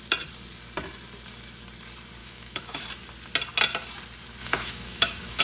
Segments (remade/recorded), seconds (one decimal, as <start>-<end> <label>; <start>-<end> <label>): 0.0-2.2 recorded; 2.2-2.8 remade; 2.8-4.4 recorded; 4.4-5.4 remade

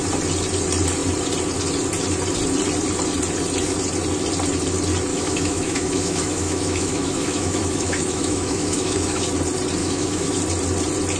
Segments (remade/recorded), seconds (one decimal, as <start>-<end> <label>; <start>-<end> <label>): 0.0-5.1 recorded; 5.1-9.2 remade; 9.2-9.8 recorded; 9.8-10.4 remade; 10.4-11.2 recorded

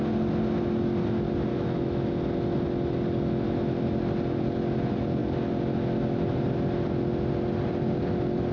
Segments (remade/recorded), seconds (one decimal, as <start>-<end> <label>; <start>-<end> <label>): 0.0-1.5 recorded; 1.5-2.1 remade; 2.1-8.5 recorded

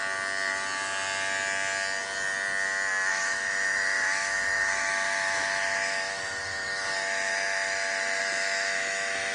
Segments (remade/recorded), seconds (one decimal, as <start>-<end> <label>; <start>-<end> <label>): 0.0-3.1 recorded; 3.1-9.3 remade